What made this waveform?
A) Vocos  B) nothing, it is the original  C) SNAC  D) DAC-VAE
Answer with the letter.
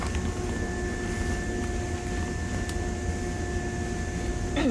B